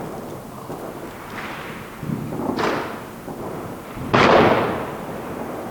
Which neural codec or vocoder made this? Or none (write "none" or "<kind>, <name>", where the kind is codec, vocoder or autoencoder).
none